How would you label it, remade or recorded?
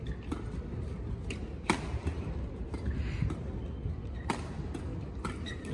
recorded